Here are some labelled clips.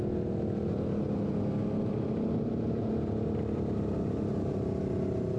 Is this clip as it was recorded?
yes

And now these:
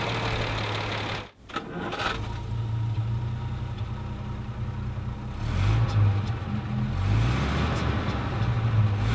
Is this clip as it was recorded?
yes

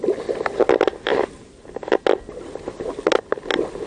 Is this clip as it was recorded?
yes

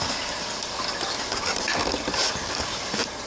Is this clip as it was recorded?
yes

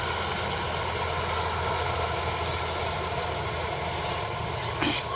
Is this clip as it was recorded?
yes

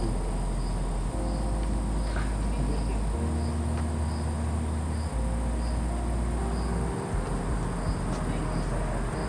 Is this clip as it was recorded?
yes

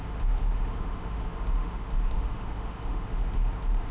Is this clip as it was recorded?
no